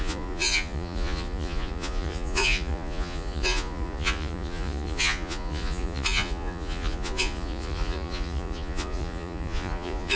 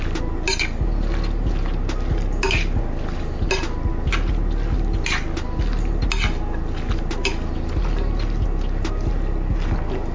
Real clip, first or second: second